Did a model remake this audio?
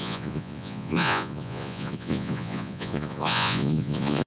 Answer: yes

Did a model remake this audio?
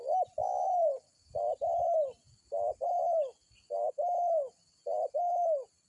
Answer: no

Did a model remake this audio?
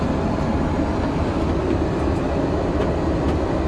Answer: no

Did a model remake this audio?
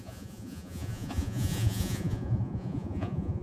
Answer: yes